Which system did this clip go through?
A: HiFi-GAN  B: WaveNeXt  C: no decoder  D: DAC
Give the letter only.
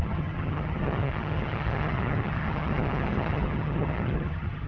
A